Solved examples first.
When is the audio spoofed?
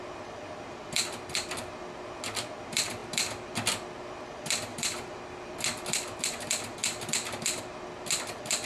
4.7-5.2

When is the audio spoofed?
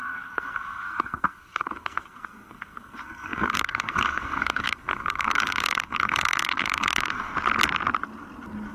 0.0-7.3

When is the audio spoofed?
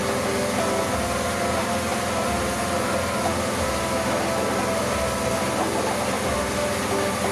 none